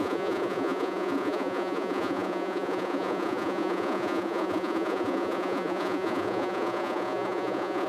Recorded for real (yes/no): no